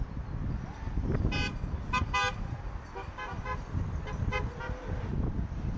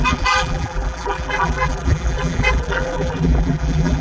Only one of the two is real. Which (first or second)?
first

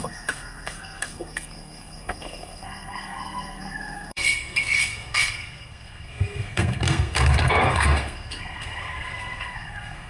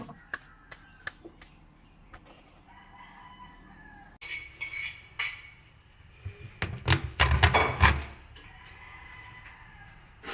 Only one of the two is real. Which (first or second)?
second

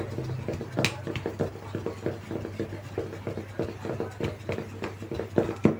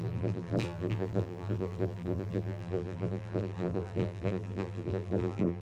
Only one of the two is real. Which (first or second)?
first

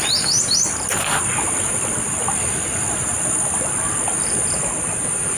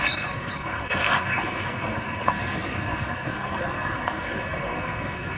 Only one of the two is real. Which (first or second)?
first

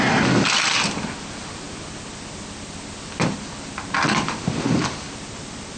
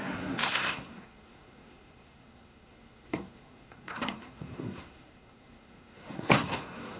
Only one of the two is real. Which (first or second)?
first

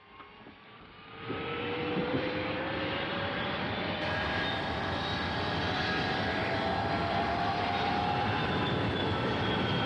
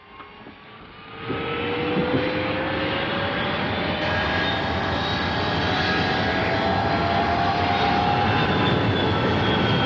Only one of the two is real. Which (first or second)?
second